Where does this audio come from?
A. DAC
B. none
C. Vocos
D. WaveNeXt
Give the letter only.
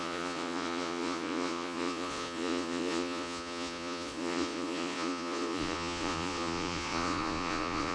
C